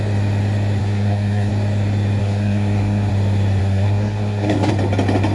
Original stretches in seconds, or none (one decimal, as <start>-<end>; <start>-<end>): 0.0-0.8; 1.5-2.2; 3.1-3.6; 4.7-5.3